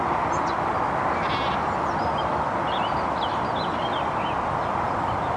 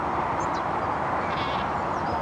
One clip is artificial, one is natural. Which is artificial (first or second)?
second